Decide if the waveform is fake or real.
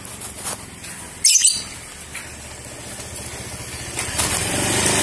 real